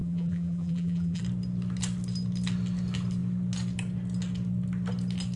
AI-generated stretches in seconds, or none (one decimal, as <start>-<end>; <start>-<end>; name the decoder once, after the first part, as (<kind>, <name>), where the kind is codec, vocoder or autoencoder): 0.0-1.2 (vocoder, BigVGAN v2)